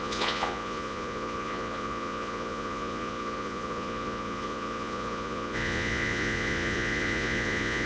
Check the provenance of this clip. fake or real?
fake